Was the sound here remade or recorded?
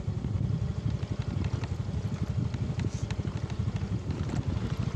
recorded